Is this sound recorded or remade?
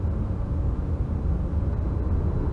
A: recorded